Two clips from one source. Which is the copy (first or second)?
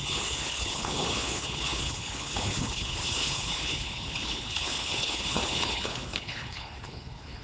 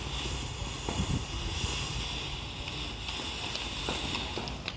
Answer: first